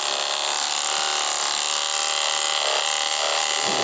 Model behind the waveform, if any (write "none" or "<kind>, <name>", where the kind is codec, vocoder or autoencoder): none